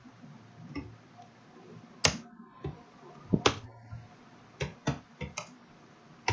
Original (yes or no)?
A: yes